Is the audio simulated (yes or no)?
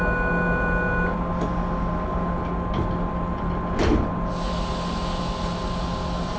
no